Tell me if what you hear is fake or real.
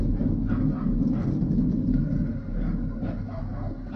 real